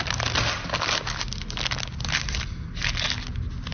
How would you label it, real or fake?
real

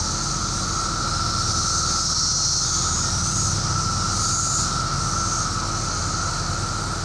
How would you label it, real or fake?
real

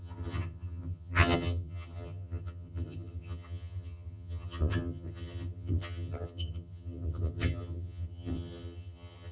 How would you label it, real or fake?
fake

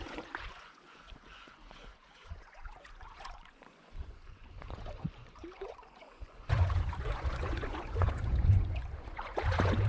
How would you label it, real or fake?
fake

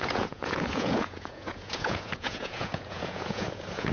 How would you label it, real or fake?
fake